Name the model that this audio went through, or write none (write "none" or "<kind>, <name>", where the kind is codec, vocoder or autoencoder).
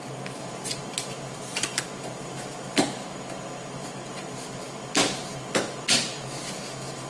none